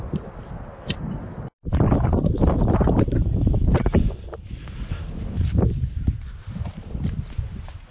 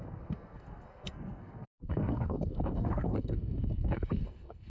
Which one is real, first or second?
first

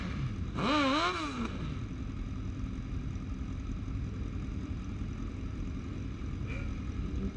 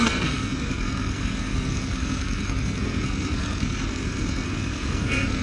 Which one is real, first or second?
first